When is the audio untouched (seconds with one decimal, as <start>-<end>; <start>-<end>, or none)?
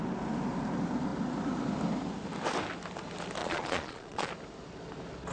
0.0-3.4; 4.3-5.3